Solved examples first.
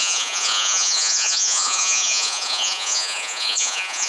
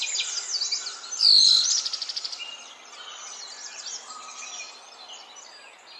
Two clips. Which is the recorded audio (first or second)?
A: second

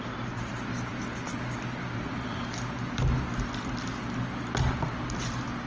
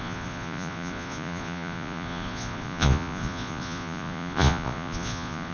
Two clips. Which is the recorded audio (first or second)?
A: first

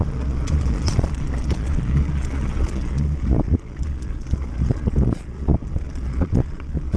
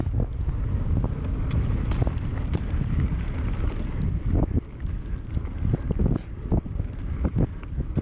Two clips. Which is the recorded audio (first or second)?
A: second